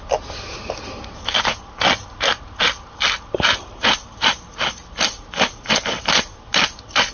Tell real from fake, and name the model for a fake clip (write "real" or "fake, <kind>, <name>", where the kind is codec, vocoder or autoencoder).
real